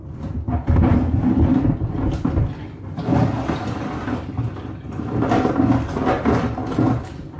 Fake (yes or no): no